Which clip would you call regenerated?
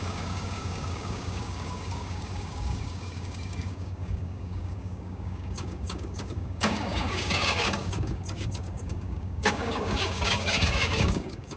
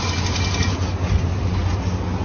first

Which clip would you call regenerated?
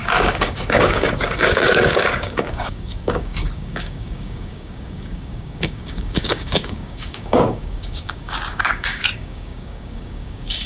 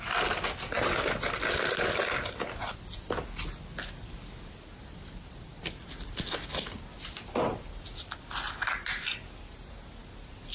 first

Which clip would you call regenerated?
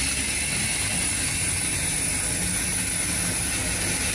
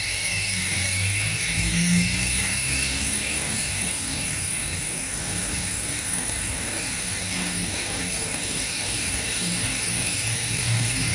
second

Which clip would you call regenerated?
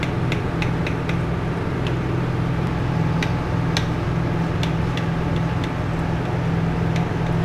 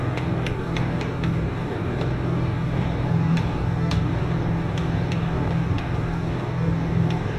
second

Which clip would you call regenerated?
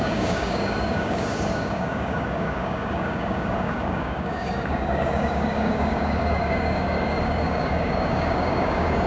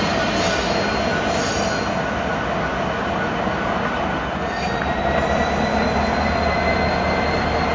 first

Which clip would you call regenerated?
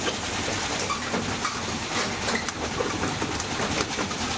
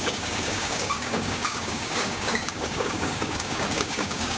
second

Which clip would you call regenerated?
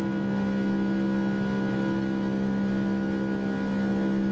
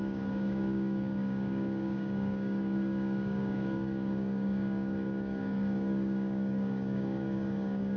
second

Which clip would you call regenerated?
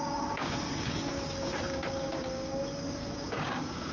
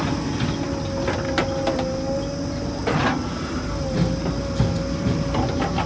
first